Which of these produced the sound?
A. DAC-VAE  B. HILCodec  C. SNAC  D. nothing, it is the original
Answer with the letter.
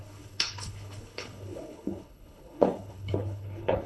B